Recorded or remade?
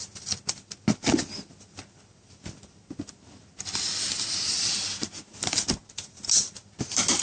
recorded